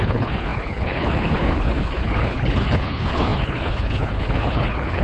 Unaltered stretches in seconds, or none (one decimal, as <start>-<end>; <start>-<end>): none